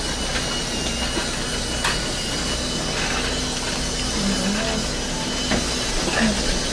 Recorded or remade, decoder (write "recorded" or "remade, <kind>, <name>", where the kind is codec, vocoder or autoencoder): recorded